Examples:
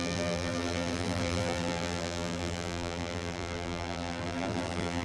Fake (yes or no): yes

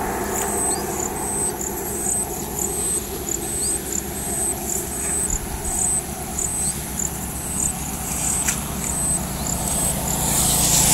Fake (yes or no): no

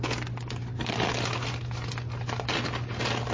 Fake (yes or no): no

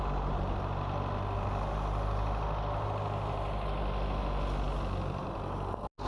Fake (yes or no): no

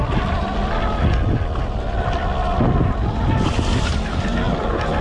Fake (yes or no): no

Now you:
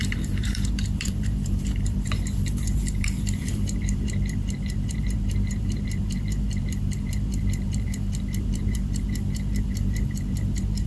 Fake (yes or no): yes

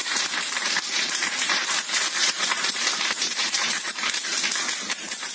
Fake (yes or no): yes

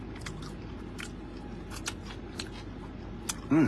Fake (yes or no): no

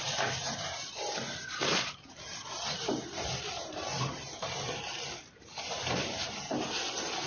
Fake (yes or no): yes